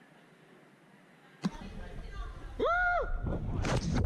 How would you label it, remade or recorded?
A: recorded